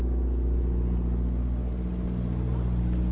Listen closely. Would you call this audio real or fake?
real